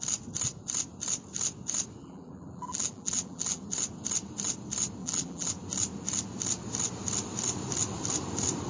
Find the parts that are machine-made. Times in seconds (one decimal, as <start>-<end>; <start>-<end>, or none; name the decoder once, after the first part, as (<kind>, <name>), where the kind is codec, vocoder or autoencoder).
2.0-3.6 (vocoder, BigVGAN v2); 5.0-5.5